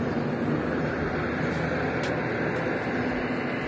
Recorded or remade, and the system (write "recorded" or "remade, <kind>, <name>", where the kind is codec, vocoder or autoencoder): recorded